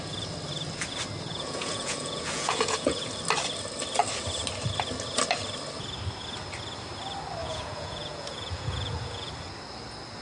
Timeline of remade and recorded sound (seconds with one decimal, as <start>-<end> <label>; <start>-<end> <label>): 0.0-1.3 recorded; 1.3-3.1 remade; 3.1-7.4 recorded; 7.4-9.3 remade; 9.3-10.2 recorded